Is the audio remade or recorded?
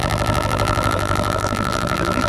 remade